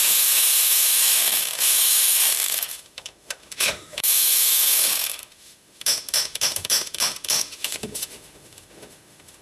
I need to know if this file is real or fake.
fake